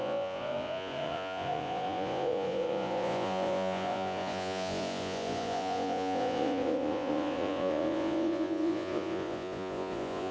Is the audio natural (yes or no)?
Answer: no